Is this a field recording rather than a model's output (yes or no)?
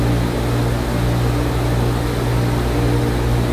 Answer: yes